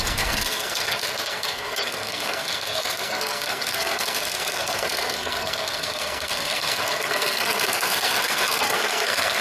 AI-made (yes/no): yes